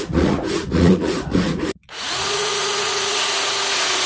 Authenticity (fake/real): fake